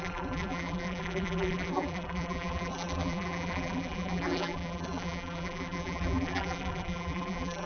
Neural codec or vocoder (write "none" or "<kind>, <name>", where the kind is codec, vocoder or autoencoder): vocoder, BigVGAN v2